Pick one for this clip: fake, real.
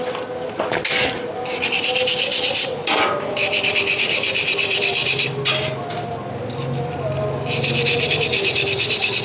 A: real